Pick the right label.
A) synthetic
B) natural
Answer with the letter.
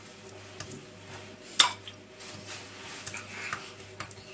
B